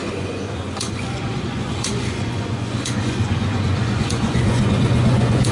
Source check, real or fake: fake